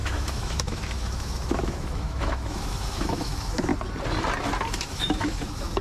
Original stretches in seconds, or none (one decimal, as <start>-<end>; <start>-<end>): 3.7-4.7